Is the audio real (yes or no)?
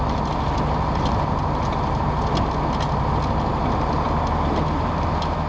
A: yes